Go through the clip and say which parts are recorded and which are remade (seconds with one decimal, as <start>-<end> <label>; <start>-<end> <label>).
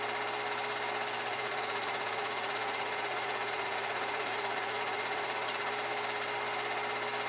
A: 0.0-1.3 recorded; 1.3-5.7 remade; 5.7-7.3 recorded